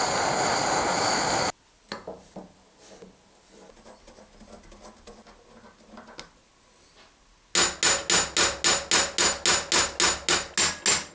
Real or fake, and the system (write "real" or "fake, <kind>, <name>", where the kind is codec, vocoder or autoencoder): real